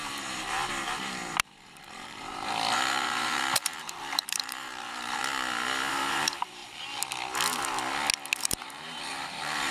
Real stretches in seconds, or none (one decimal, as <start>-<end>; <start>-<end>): 5.2-5.9; 6.6-8.4